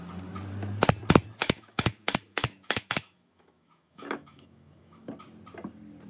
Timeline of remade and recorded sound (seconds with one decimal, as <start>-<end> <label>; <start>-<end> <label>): 0.0-1.4 recorded; 1.4-5.1 remade; 5.1-6.1 recorded